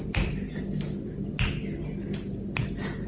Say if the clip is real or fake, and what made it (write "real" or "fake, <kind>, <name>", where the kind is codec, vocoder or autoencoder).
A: real